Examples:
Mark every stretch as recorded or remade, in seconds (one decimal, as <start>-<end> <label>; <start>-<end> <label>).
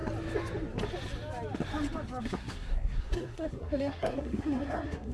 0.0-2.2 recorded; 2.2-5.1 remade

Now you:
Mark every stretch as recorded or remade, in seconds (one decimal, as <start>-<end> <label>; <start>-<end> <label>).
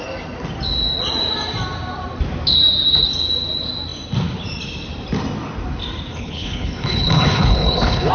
0.0-6.1 recorded; 6.1-8.1 remade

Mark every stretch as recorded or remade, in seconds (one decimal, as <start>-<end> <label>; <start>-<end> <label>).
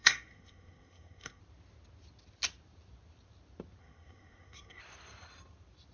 0.0-1.4 remade; 1.4-3.8 recorded; 3.8-4.8 remade; 4.8-5.9 recorded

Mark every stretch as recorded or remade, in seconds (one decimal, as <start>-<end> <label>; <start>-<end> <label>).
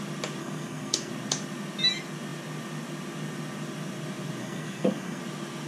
0.0-0.4 recorded; 0.4-1.1 remade; 1.1-4.4 recorded; 4.4-5.2 remade; 5.2-5.7 recorded